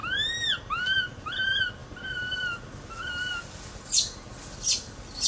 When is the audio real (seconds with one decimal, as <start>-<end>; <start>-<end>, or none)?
0.0-5.3